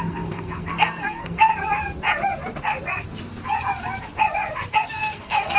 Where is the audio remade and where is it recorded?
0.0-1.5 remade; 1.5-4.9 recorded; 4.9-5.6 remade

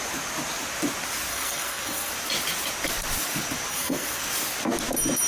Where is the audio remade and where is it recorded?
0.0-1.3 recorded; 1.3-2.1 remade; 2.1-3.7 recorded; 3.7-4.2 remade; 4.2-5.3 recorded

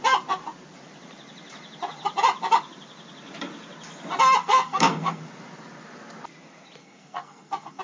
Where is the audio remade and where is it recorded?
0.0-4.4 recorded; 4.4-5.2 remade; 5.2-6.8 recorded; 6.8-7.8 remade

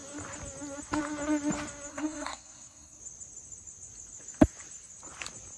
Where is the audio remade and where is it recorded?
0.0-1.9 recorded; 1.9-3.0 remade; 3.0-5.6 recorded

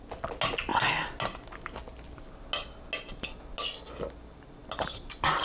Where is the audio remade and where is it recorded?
0.0-5.4 recorded

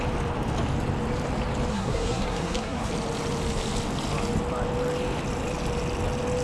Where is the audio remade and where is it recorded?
0.0-1.7 recorded; 1.7-2.9 remade; 2.9-6.4 recorded

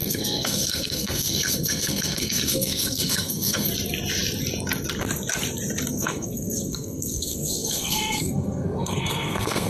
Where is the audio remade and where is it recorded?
0.0-3.7 remade; 3.7-5.9 recorded; 5.9-9.7 remade

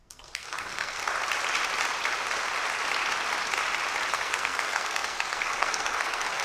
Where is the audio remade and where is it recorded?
0.0-1.0 remade; 1.0-4.1 recorded; 4.1-6.4 remade